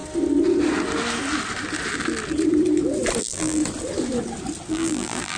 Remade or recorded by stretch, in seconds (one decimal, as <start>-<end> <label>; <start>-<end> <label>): 0.0-3.2 recorded; 3.2-3.6 remade; 3.6-4.7 recorded; 4.7-5.4 remade